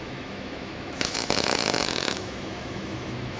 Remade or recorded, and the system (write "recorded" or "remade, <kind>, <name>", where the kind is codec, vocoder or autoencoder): remade, autoencoder, DAC-VAE